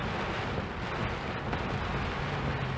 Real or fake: real